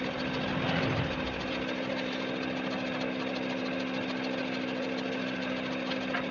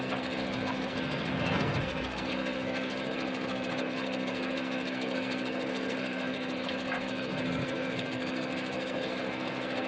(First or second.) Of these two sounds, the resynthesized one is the second